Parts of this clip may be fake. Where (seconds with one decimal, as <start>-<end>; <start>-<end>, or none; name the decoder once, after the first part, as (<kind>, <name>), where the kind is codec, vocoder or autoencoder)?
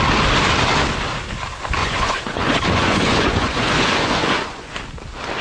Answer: 1.8-4.8 (vocoder, Vocos)